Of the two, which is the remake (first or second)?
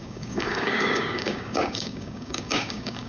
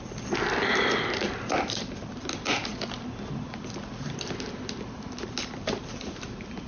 first